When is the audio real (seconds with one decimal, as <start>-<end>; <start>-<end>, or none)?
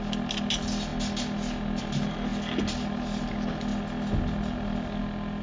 0.0-5.4